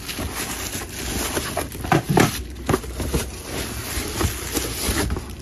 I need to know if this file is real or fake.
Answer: real